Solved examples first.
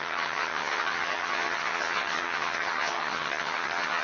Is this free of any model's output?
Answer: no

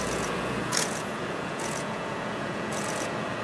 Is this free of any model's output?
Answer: no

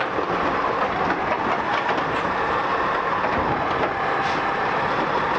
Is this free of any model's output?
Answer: yes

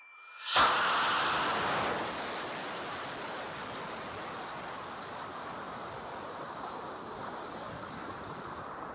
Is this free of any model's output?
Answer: yes